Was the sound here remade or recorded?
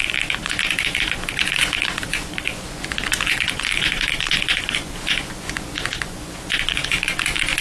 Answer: remade